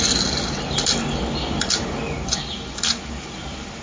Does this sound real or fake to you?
real